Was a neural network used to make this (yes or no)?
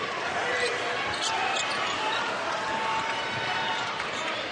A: yes